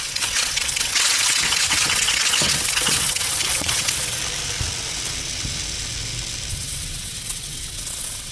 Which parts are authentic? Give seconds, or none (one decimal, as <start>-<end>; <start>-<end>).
4.2-6.5